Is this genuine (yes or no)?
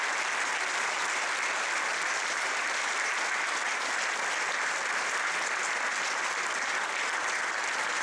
yes